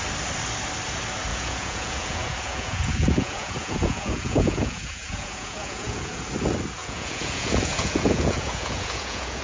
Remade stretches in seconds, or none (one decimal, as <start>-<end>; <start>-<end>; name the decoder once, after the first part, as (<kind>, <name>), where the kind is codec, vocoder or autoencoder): 1.3-6.2 (vocoder, Vocos); 6.8-9.4